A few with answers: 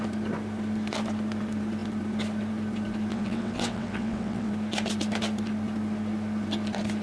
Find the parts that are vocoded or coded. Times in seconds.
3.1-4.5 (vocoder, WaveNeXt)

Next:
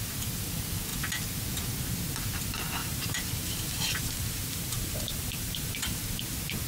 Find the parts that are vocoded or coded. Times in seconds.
2.8-6.2 (vocoder, BigVGAN v2)

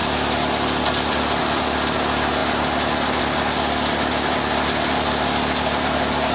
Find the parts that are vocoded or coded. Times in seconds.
none

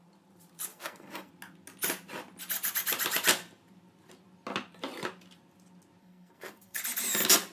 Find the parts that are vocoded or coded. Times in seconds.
0.7-1.3 (codec, SNAC); 6.0-6.8

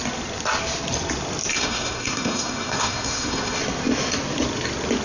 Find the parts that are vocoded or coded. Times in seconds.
1.5-3.6 (codec, SNAC)

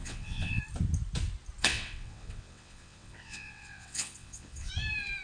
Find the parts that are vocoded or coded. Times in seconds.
0.0-0.6 (vocoder, WaveNeXt); 1.6-4.7

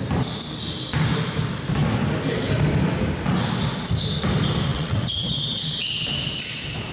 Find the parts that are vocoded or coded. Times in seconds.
4.7-6.0 (vocoder, WaveNeXt)

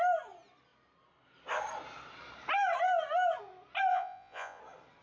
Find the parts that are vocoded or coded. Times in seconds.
3.9-4.6 (vocoder, Vocos)